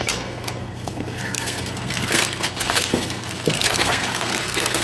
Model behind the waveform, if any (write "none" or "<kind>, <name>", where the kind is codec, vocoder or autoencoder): codec, SNAC